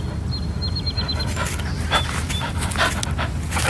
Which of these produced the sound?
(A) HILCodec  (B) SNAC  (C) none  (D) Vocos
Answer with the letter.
C